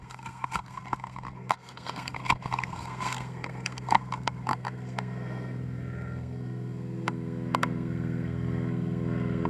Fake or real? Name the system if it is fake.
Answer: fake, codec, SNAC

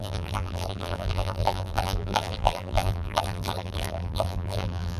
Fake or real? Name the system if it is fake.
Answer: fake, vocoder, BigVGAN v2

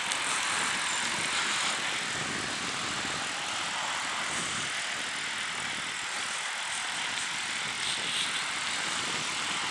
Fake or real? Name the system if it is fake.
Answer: real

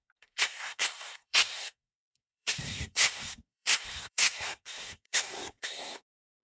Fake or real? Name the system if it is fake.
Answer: fake, codec, SNAC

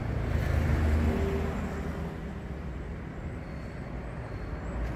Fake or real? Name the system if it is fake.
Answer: real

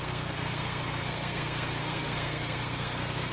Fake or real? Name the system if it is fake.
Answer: fake, codec, SNAC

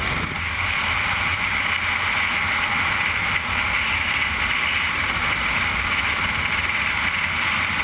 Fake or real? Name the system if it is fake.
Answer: real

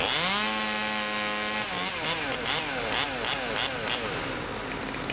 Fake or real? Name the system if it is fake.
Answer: real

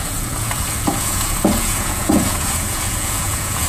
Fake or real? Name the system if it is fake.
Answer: fake, vocoder, Vocos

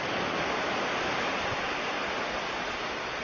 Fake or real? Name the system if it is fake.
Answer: real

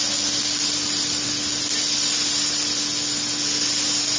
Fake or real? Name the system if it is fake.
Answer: real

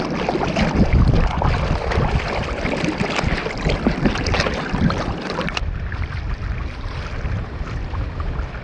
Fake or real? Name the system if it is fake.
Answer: real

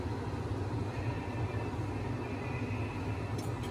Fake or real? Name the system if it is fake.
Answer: real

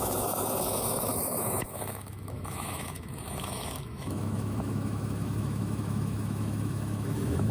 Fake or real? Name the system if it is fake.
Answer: fake, autoencoder, DAC-VAE